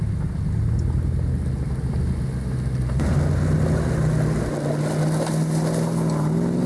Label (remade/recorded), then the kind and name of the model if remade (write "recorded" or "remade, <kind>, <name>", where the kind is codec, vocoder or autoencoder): recorded